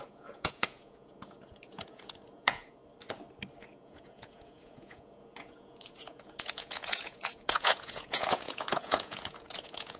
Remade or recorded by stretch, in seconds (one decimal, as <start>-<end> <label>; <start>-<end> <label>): 0.0-2.8 remade; 2.8-3.6 recorded; 3.6-10.0 remade